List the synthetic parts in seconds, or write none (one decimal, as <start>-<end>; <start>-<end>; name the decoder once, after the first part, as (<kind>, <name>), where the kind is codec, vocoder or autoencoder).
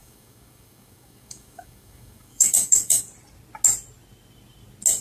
0.0-3.0 (codec, DAC)